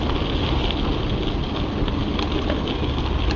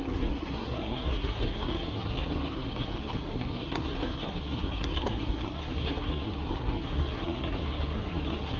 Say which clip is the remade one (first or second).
second